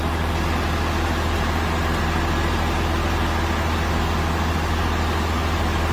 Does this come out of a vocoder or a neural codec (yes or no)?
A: no